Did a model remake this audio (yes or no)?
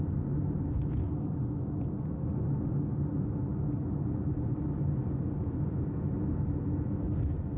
no